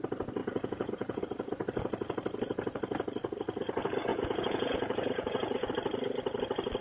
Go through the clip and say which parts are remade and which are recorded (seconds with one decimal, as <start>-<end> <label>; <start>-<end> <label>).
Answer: 0.0-0.4 recorded; 0.4-1.2 remade; 1.2-4.1 recorded; 4.1-5.7 remade; 5.7-6.8 recorded